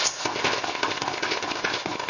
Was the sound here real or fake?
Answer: fake